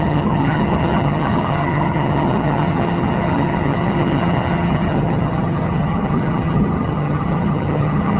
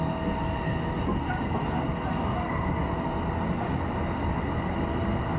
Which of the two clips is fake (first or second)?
first